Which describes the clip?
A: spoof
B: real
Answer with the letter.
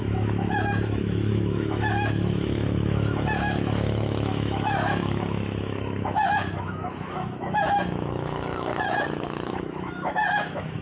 A